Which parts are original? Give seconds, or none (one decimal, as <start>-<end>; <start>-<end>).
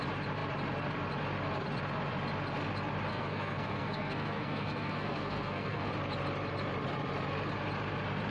0.0-3.1; 5.9-8.3